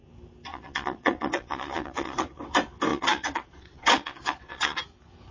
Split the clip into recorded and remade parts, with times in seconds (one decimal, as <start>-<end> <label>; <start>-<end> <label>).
0.0-0.5 recorded; 0.5-2.4 remade; 2.4-2.9 recorded; 2.9-4.8 remade; 4.8-5.3 recorded